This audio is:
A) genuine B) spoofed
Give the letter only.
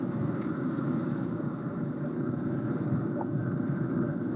B